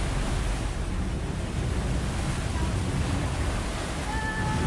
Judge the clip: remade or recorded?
recorded